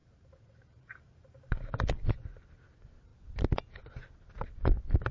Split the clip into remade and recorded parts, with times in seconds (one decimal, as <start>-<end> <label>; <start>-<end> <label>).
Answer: 0.0-2.1 remade; 2.1-5.1 recorded